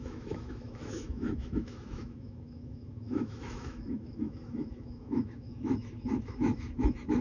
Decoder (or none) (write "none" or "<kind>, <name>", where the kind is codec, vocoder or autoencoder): autoencoder, DAC-VAE